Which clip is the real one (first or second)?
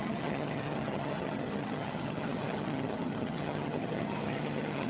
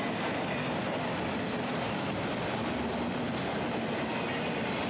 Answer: second